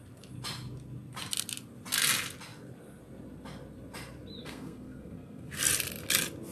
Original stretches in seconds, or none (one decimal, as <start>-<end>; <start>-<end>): 0.0-4.4; 5.6-6.5